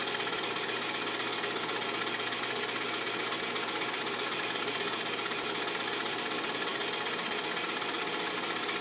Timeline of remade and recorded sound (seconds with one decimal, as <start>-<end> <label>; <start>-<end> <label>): 0.0-8.8 recorded